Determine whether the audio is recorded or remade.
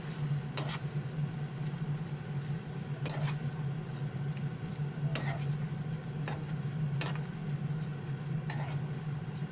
recorded